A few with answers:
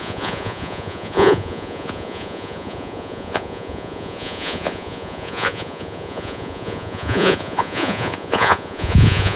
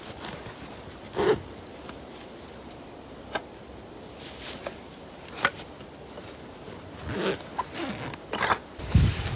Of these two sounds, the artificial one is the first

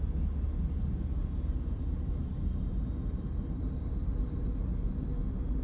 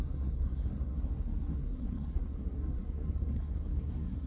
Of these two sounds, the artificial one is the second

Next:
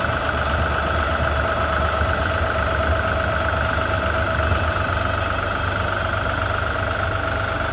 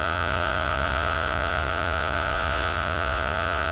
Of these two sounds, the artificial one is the second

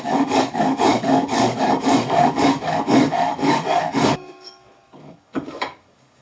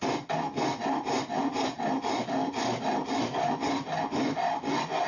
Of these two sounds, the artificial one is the first